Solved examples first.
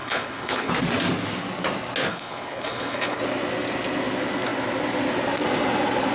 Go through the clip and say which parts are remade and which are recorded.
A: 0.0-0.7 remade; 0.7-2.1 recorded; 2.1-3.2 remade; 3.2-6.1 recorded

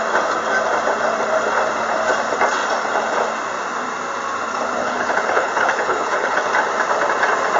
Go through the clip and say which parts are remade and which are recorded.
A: 0.0-4.8 recorded; 4.8-6.5 remade; 6.5-7.6 recorded

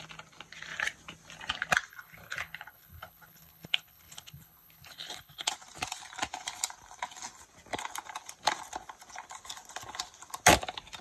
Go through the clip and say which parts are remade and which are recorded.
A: 0.0-1.9 recorded; 1.9-5.5 remade; 5.5-11.0 recorded

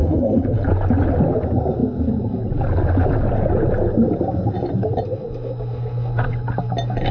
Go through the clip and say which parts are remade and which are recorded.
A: 0.0-0.7 remade; 0.7-7.1 recorded

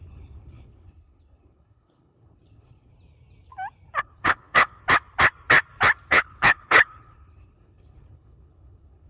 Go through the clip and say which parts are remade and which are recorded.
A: 0.0-2.9 remade; 2.9-4.0 recorded; 4.0-4.8 remade; 4.8-6.1 recorded; 6.1-9.1 remade